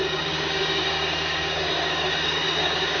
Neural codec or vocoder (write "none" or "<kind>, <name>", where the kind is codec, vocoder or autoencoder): codec, DAC